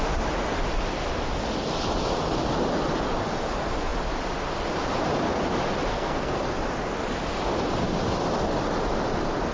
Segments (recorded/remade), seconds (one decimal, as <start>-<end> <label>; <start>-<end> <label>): 0.0-5.9 recorded; 5.9-6.5 remade; 6.5-9.5 recorded